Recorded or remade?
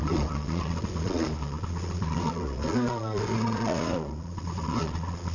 remade